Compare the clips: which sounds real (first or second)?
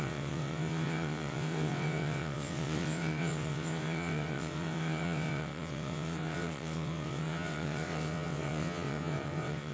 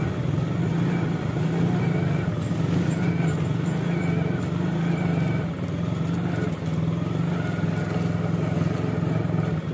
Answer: second